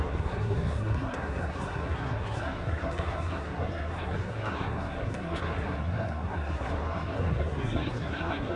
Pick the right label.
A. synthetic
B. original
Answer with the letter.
A